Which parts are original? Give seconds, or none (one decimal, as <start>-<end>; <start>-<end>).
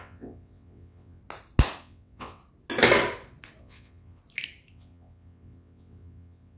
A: 1.2-1.8; 2.4-3.6; 4.2-4.7